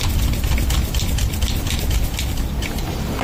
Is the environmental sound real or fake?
fake